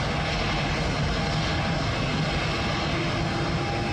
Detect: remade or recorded recorded